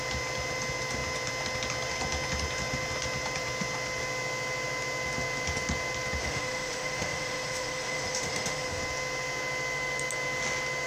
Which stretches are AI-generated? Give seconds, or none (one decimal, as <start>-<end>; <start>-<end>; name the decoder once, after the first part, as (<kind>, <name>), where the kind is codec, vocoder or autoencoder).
6.2-8.8 (autoencoder, DAC-VAE)